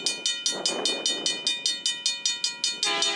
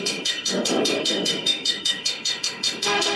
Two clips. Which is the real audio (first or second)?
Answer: first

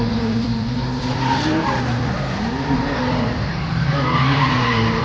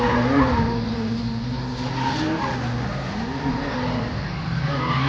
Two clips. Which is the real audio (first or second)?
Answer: second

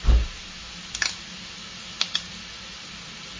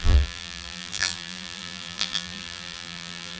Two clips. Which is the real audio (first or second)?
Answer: first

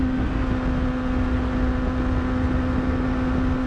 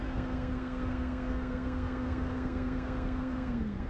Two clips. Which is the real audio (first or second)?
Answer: first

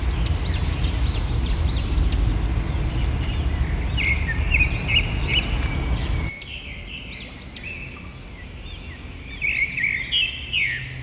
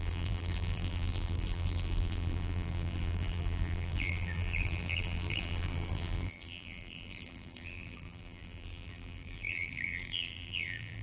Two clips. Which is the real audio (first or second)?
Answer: first